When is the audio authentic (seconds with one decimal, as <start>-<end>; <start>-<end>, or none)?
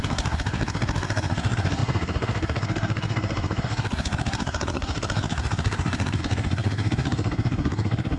none